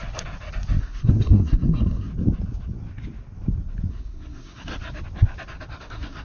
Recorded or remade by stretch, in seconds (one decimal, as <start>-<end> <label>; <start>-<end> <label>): 0.0-0.8 recorded; 0.8-2.1 remade; 2.1-3.9 recorded; 3.9-4.7 remade; 4.7-5.8 recorded; 5.8-6.2 remade